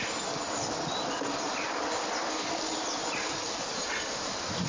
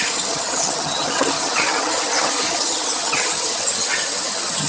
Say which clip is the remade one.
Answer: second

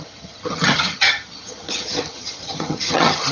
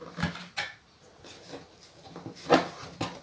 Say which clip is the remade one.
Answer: first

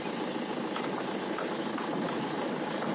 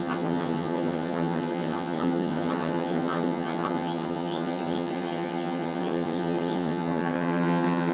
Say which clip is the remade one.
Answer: second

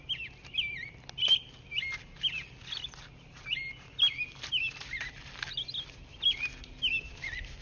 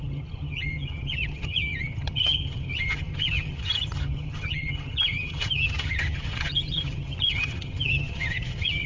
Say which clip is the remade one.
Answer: second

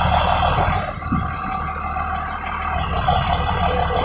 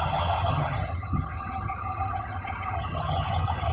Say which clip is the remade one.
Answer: second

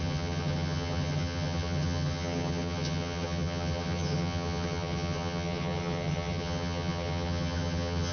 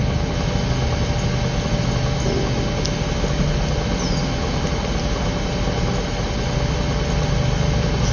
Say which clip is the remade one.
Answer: first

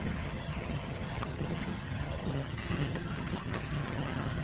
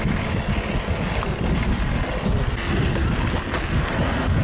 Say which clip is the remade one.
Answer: first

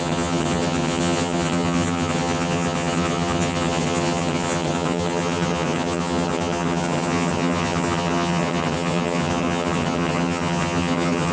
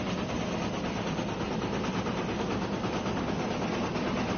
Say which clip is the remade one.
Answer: first